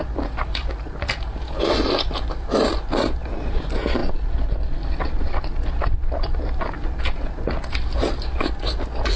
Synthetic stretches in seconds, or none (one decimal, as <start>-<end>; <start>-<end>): none